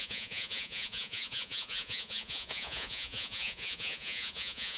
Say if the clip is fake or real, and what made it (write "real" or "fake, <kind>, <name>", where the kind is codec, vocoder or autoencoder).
fake, vocoder, Vocos